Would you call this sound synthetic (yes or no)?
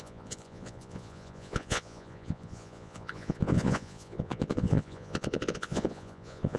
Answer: yes